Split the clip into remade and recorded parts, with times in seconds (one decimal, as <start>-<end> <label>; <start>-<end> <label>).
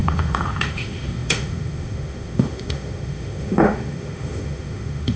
0.0-5.2 remade